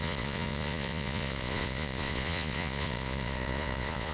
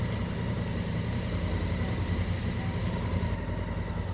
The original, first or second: second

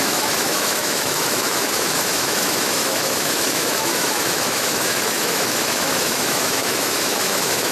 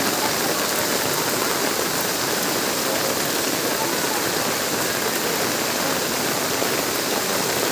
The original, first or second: second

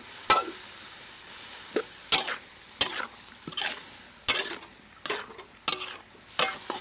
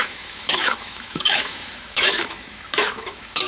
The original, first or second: first